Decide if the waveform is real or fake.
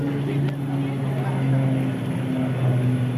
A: real